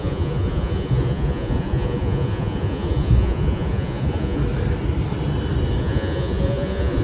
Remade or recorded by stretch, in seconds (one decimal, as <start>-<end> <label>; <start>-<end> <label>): 0.0-4.4 remade; 4.4-5.8 recorded; 5.8-7.0 remade